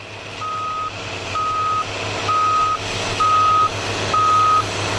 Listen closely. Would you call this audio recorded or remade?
recorded